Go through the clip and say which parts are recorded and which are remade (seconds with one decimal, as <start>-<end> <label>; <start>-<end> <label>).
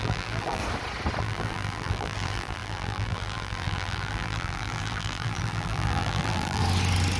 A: 0.0-0.6 remade; 0.6-1.2 recorded; 1.2-6.6 remade; 6.6-7.2 recorded